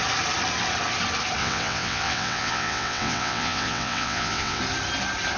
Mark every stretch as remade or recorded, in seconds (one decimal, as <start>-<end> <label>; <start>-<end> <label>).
0.0-1.4 recorded; 1.4-4.6 remade; 4.6-5.4 recorded